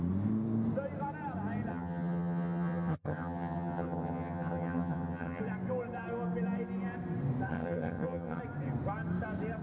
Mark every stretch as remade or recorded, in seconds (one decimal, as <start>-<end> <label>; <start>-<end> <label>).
0.0-1.7 recorded; 1.7-5.4 remade; 5.4-7.5 recorded; 7.5-8.4 remade; 8.4-9.6 recorded

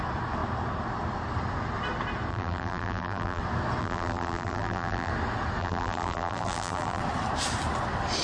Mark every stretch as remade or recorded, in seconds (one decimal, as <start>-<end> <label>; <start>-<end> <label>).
0.0-2.3 recorded; 2.3-3.4 remade; 3.4-3.8 recorded; 3.8-5.1 remade; 5.1-5.6 recorded; 5.6-7.0 remade; 7.0-8.2 recorded

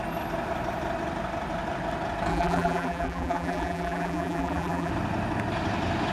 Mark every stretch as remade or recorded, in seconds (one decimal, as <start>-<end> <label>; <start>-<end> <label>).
0.0-2.3 recorded; 2.3-4.9 remade; 4.9-6.1 recorded

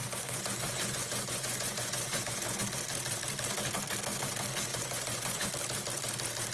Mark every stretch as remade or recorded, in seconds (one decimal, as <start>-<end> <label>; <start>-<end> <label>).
0.0-2.6 remade; 2.6-4.7 recorded; 4.7-5.5 remade; 5.5-6.5 recorded

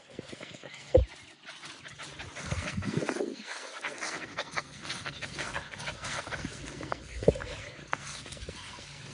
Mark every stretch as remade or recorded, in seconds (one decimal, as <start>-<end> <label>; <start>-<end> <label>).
0.0-1.0 remade; 1.0-2.4 recorded; 2.4-9.1 remade

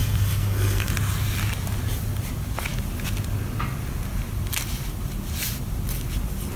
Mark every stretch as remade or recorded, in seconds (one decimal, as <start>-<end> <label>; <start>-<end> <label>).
0.0-0.9 remade; 0.9-6.6 recorded

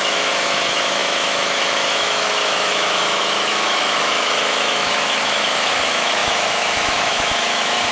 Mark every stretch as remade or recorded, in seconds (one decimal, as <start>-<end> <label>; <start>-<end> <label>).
0.0-7.9 remade

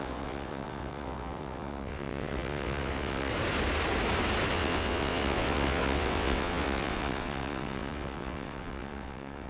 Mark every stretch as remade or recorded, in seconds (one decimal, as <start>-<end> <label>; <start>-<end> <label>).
0.0-3.3 remade; 3.3-4.5 recorded; 4.5-9.5 remade